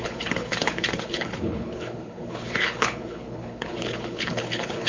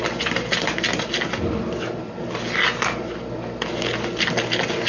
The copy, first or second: first